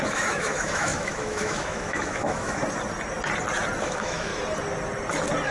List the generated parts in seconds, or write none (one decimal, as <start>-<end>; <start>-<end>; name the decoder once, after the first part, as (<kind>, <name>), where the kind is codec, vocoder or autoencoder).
0.0-2.6 (autoencoder, DAC-VAE); 3.8-4.3